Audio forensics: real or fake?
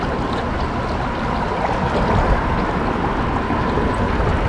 real